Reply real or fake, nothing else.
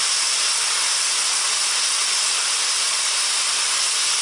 real